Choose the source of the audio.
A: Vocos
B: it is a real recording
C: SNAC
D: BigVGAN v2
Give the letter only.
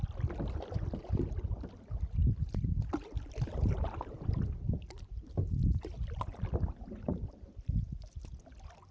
B